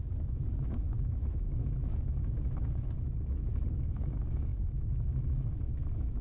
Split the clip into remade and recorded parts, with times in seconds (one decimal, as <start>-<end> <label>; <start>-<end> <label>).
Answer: 0.0-6.2 remade